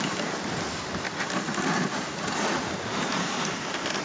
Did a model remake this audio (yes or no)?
no